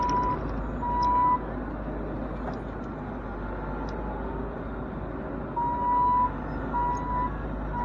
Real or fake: real